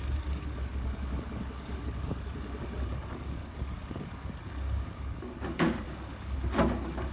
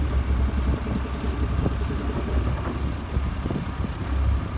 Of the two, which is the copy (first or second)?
first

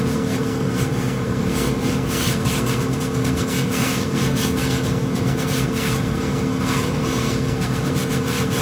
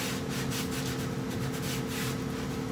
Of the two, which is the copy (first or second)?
first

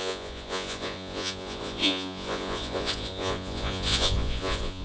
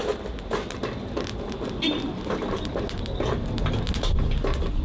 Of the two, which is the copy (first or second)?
first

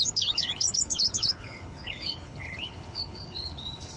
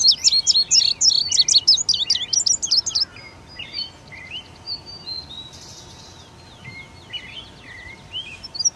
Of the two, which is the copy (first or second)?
first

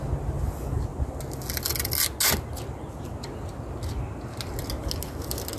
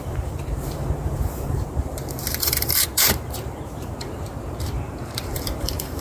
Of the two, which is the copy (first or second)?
second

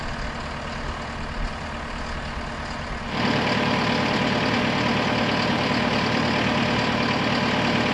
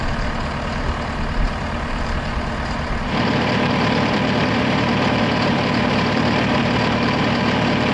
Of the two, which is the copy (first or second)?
second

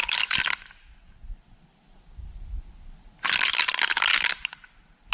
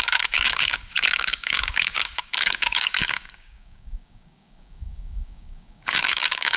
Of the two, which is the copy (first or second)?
second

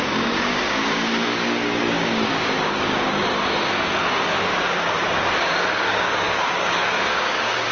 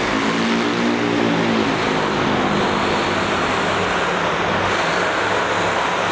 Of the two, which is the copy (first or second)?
first